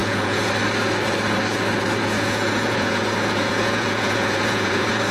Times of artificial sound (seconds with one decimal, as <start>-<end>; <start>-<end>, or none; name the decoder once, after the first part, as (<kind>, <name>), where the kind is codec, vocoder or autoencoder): 0.0-0.5 (vocoder, Vocos); 2.0-5.1

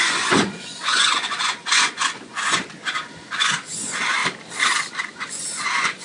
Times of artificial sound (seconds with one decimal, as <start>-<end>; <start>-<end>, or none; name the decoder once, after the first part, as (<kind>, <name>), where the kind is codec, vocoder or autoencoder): 0.0-4.2 (vocoder, Vocos); 5.0-6.0

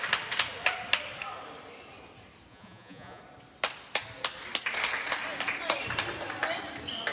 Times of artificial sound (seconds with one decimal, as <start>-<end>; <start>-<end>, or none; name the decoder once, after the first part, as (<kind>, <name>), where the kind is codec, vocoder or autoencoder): 2.5-3.2 (vocoder, Vocos)

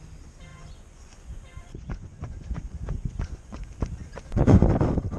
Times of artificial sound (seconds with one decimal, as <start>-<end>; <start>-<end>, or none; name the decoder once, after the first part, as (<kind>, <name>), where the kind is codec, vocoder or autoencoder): 0.5-3.6 (vocoder, Vocos); 4.0-4.7

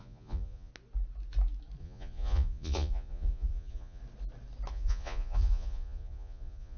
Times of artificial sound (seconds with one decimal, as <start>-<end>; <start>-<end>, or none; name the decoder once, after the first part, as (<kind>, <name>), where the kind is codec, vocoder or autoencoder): 0.0-0.7 (vocoder, Vocos); 1.8-4.0; 4.7-6.8

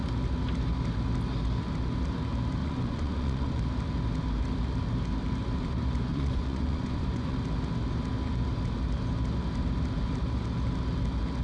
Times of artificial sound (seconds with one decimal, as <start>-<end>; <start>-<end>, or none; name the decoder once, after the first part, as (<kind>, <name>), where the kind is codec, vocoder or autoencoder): 2.6-3.6 (vocoder, Vocos); 6.1-7.4

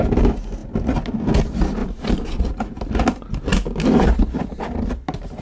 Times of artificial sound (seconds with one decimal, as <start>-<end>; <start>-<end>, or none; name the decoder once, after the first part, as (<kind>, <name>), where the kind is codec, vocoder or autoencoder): none

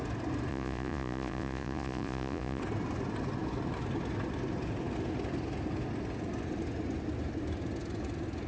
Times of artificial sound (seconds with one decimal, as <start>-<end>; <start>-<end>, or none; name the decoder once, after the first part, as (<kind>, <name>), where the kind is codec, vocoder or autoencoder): 0.5-2.6 (vocoder, Vocos)